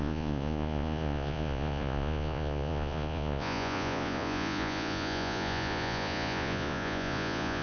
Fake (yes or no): yes